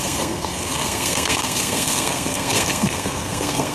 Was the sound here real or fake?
fake